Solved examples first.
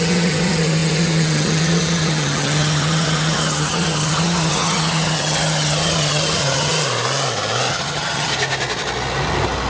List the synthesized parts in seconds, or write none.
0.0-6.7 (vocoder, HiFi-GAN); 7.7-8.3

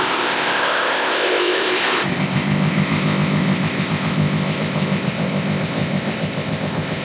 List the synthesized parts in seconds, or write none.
0.0-7.0 (codec, ZipCodec)

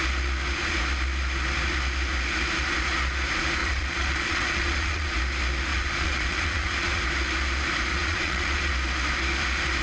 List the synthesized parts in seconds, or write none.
3.6-5.2 (vocoder, Vocos); 5.7-7.0; 7.9-8.7

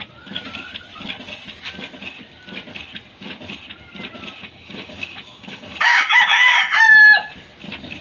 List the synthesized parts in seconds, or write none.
4.4-6.6 (codec, DAC)

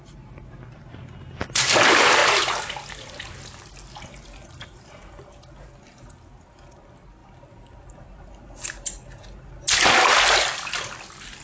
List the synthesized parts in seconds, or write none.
none